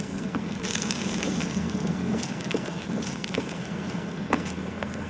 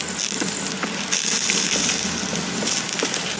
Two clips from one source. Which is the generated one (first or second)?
first